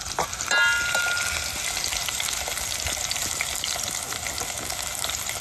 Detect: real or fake real